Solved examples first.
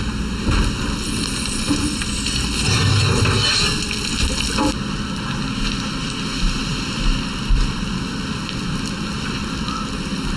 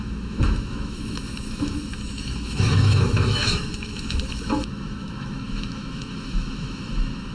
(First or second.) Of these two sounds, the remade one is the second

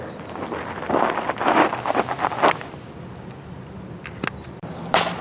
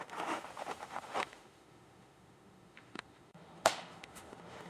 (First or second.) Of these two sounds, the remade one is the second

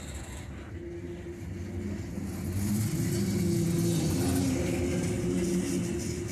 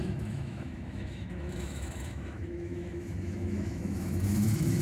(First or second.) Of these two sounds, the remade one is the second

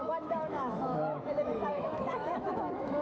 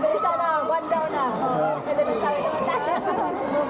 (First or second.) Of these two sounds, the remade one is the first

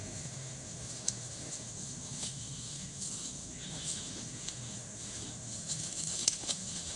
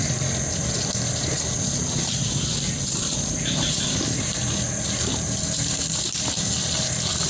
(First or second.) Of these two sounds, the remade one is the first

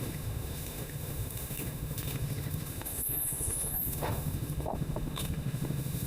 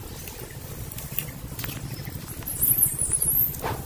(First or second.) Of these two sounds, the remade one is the first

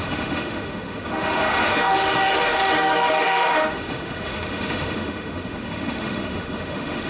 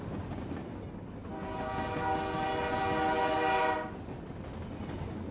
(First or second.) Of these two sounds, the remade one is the first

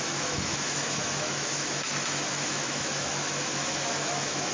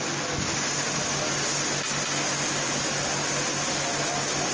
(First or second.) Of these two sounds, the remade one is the first